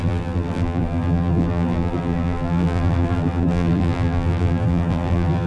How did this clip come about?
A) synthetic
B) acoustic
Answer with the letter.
A